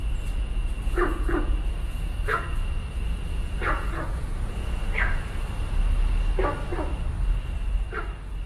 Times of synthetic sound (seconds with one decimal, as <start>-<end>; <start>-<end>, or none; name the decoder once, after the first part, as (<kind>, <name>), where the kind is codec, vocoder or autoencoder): 0.0-5.1 (vocoder, Vocos)